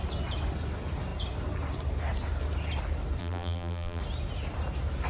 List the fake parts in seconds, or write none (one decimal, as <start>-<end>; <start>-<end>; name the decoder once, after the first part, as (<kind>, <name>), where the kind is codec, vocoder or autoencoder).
3.2-4.0 (vocoder, BigVGAN v2)